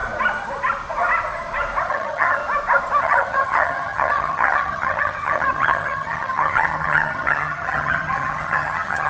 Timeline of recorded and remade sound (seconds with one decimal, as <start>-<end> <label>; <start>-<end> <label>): 0.0-1.9 recorded; 1.9-2.4 remade; 2.4-3.0 recorded; 3.0-9.1 remade